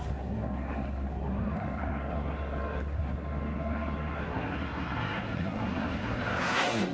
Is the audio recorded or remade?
remade